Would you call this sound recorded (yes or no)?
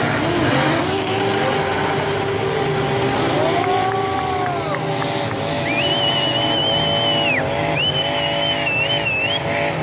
yes